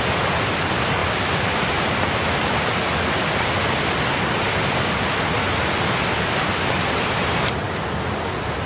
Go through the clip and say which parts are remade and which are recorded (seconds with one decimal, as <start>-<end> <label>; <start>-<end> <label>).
0.0-8.7 recorded